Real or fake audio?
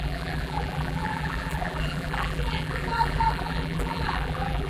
fake